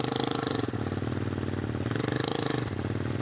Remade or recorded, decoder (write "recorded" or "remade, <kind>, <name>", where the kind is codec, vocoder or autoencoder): recorded